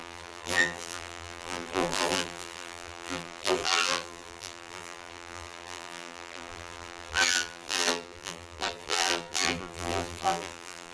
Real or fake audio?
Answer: fake